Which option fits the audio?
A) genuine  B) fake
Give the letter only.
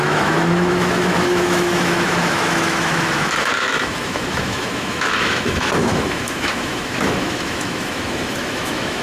B